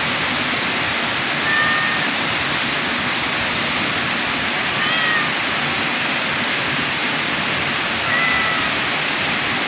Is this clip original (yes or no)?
yes